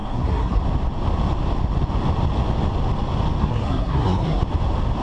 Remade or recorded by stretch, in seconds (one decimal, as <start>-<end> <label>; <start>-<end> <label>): 0.0-0.6 remade; 0.6-3.4 recorded; 3.4-4.4 remade; 4.4-5.0 recorded